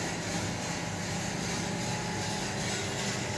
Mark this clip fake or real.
real